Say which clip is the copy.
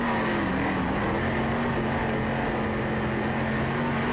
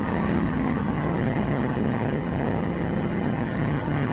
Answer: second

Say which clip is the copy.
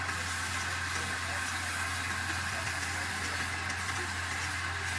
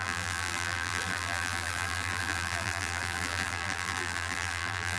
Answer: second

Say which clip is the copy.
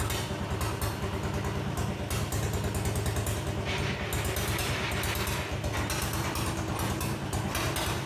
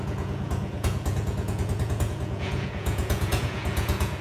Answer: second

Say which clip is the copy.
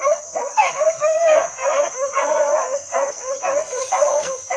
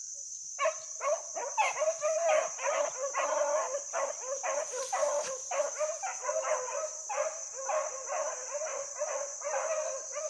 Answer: first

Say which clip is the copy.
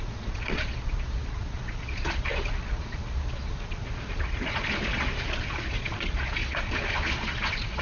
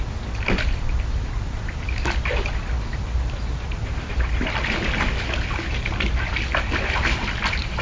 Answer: first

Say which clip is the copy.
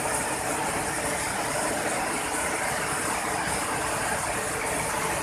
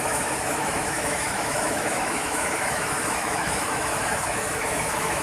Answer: second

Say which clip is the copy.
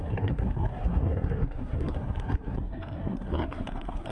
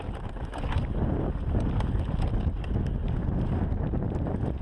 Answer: first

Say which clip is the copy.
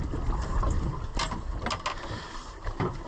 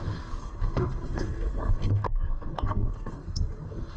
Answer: second